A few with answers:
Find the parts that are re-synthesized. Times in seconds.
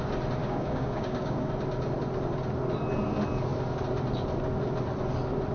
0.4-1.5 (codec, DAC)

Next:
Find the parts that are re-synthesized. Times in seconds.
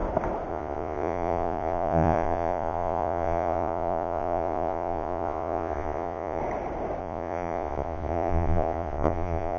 0.5-6.4 (vocoder, Vocos); 7.0-9.6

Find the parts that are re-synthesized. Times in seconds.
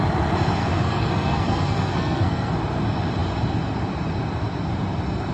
0.6-2.5 (codec, SNAC)